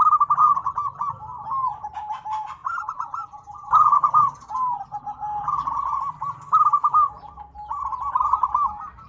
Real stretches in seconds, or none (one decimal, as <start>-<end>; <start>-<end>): 0.0-2.6; 3.7-9.1